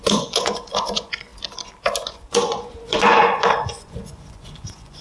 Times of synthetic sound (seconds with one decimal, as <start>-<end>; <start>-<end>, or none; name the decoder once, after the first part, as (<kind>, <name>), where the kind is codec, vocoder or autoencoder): 0.0-1.3 (vocoder, Vocos); 2.0-5.0